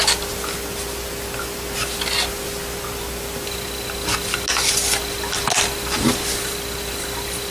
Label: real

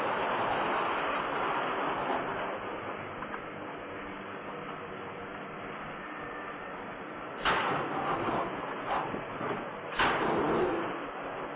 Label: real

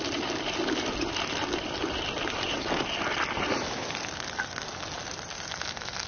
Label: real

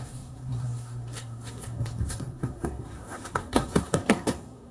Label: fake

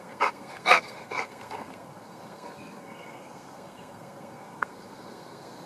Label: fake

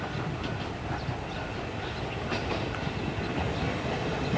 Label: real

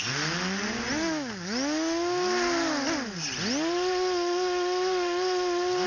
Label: real